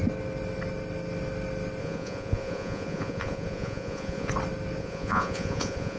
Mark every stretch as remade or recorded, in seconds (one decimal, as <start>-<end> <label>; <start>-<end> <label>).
0.0-1.8 recorded; 1.8-4.3 remade; 4.3-4.8 recorded; 4.8-6.0 remade